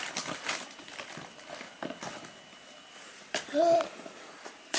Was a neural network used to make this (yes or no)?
yes